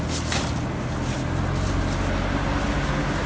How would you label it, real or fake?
real